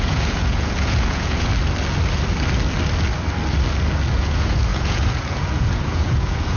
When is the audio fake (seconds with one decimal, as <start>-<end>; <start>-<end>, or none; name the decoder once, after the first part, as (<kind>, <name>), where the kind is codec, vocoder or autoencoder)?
0.0-1.5 (vocoder, Vocos); 4.1-6.6